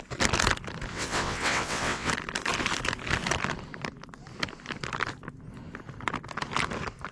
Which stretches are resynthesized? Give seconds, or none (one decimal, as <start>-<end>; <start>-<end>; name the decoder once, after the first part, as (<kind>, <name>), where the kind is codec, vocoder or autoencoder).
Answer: 0.9-2.1 (vocoder, WaveNeXt)